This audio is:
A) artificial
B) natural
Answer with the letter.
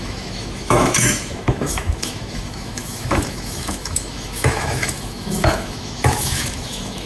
A